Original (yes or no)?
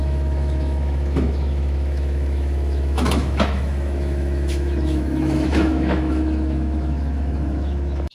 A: no